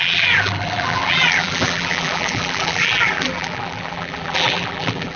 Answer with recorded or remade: remade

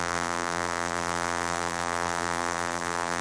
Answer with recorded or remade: remade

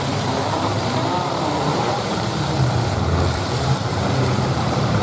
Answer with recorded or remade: remade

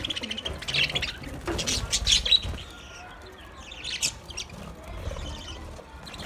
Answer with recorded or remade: recorded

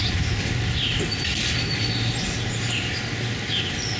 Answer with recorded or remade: recorded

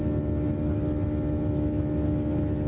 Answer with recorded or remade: recorded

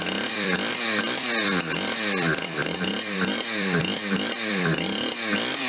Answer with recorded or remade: remade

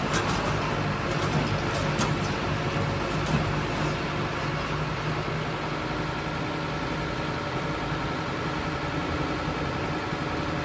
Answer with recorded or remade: recorded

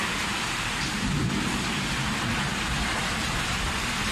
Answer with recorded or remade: recorded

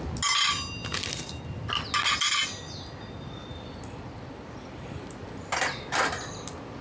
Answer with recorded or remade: recorded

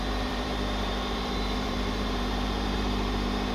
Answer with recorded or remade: remade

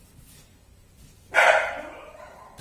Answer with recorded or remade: remade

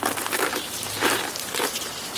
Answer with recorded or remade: remade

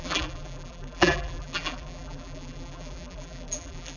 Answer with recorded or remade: remade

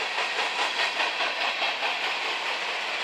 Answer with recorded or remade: recorded